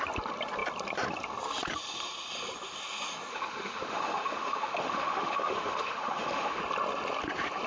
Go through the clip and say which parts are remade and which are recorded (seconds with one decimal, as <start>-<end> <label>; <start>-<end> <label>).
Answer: 0.0-3.3 recorded; 3.3-6.6 remade; 6.6-7.7 recorded